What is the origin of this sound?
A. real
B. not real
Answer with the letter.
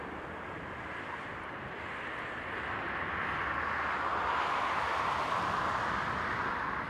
A